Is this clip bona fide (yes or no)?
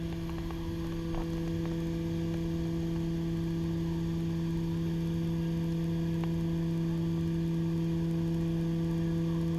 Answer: yes